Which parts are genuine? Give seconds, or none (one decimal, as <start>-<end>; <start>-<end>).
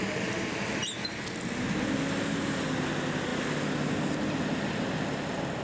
0.0-5.6